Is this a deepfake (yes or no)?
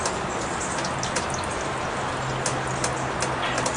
no